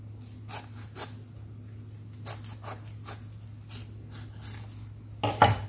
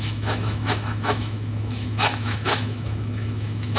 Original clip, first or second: first